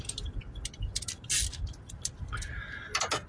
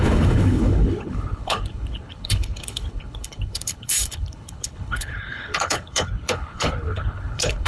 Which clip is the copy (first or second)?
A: second